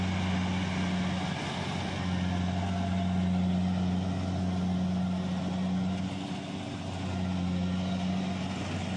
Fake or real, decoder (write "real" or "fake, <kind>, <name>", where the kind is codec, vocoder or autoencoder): real